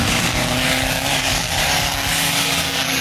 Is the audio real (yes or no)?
no